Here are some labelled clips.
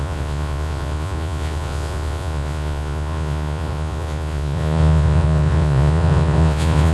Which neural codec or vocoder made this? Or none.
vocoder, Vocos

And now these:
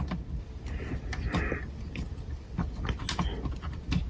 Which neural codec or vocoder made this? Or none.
none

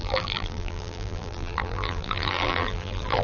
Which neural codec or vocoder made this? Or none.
vocoder, BigVGAN v2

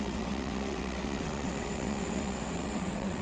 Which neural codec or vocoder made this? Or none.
vocoder, WaveNeXt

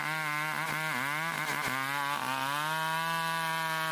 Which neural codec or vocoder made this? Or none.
none